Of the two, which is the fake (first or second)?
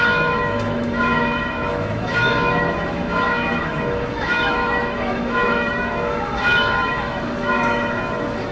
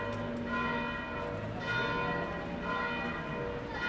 first